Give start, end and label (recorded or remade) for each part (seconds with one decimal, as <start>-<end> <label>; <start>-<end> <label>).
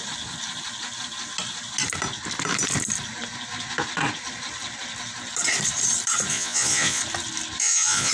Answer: 0.0-6.3 recorded; 6.3-7.0 remade; 7.0-7.6 recorded; 7.6-8.1 remade